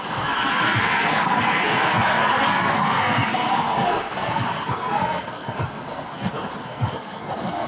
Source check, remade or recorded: remade